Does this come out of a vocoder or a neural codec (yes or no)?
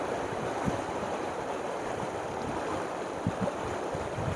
yes